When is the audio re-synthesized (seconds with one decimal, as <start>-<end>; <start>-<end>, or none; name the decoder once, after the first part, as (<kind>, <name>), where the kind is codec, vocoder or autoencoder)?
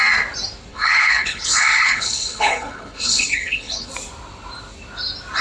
0.7-3.9 (codec, HILCodec)